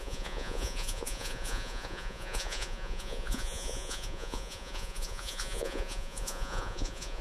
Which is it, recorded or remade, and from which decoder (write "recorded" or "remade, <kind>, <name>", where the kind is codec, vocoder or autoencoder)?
remade, vocoder, Vocos